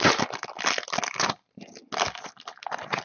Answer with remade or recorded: recorded